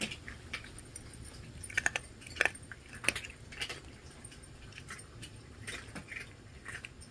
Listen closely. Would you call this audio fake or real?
real